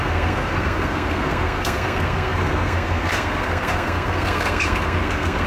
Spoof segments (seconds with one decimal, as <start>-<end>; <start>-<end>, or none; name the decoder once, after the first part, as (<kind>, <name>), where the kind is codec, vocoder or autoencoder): 0.0-5.5 (codec, SNAC)